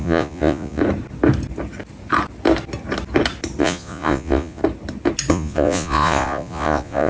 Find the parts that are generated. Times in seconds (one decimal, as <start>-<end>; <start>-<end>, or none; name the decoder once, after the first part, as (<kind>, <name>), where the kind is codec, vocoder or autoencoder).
0.0-0.8 (vocoder, Vocos); 3.6-4.6; 5.3-7.1